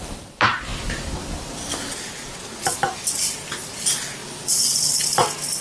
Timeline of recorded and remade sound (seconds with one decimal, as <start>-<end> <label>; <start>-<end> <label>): 0.0-5.6 recorded